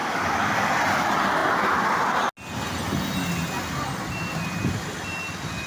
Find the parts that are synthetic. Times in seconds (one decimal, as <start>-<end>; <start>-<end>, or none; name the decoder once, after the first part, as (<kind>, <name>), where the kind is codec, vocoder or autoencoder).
0.0-0.7 (codec, DAC)